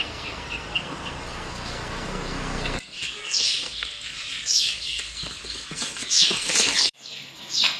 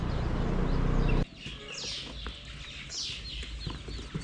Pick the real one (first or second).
second